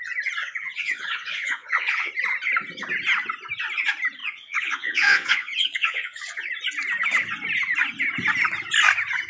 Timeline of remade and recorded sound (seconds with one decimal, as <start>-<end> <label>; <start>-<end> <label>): 0.0-0.4 recorded; 0.4-2.1 remade; 2.1-4.2 recorded; 4.2-6.5 remade; 6.5-9.3 recorded